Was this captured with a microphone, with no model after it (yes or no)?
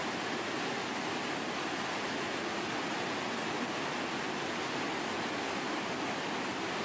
yes